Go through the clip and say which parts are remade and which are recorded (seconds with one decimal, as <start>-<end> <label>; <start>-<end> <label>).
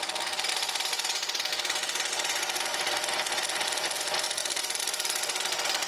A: 0.0-2.7 recorded; 2.7-3.3 remade; 3.3-4.4 recorded; 4.4-5.9 remade